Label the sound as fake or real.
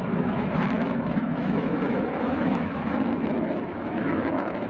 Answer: fake